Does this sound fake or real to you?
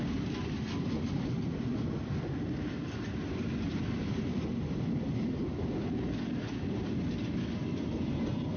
real